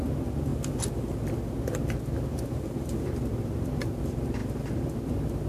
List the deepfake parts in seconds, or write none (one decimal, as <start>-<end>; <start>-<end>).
none